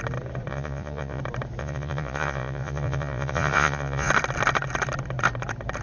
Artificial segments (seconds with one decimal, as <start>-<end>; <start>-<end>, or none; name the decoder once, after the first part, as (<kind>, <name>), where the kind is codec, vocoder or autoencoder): 0.5-1.2 (vocoder, Vocos); 1.6-4.1